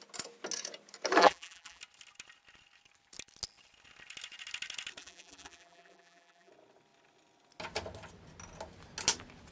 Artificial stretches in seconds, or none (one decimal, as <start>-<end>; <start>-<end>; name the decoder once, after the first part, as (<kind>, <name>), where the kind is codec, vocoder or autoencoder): 1.2-1.8 (vocoder, BigVGAN v2); 5.0-6.5